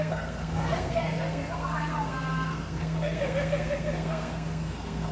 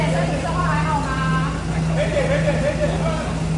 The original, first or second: second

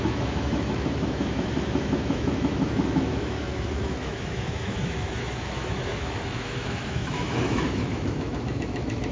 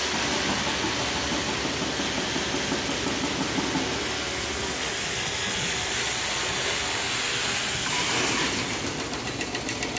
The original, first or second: second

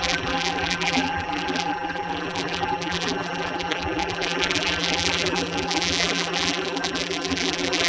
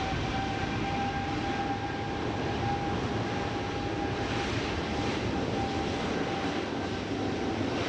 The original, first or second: second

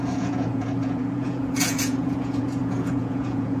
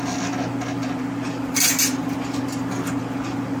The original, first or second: second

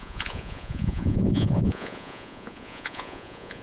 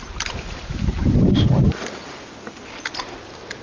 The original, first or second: second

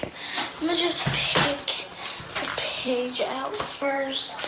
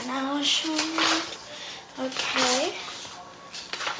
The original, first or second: second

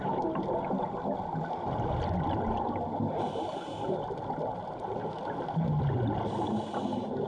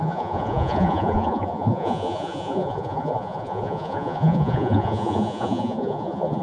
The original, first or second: first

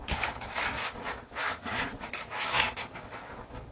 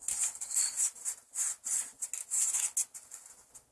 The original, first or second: second